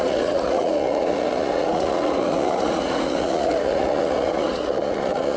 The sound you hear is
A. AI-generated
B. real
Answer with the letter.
A